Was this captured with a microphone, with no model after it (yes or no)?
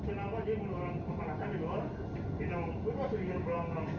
yes